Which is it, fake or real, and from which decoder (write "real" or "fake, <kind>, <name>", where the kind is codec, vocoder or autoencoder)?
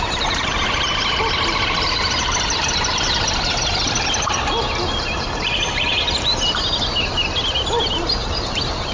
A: real